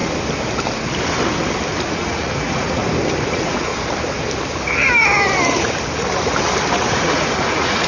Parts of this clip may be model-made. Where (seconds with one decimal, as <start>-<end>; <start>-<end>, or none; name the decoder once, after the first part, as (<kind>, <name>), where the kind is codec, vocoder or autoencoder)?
1.9-2.8 (vocoder, Vocos); 3.3-3.7; 6.9-7.9